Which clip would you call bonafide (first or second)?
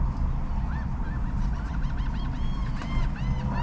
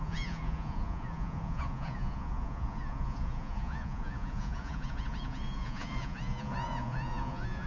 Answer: first